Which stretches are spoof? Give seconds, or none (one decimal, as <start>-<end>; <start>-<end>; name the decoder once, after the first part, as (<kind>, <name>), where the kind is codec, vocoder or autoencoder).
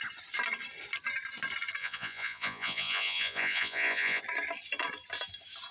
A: 1.8-4.2 (vocoder, Vocos)